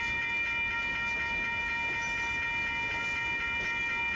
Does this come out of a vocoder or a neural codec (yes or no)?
no